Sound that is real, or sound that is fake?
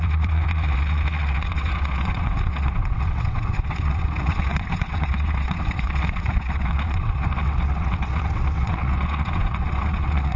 fake